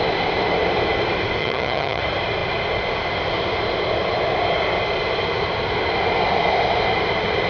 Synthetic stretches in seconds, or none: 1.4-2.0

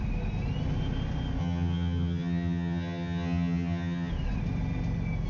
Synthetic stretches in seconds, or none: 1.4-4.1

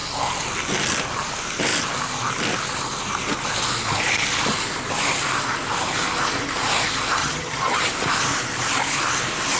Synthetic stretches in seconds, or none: 7.2-7.9

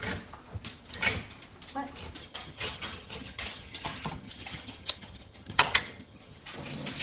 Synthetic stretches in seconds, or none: 2.2-6.4

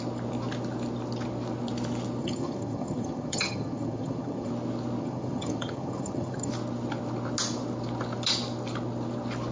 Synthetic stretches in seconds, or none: 2.2-4.5; 5.0-6.5

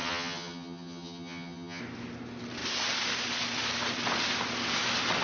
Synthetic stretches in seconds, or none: 0.0-1.8

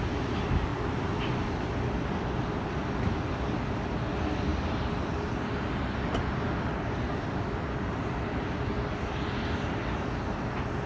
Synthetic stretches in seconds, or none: none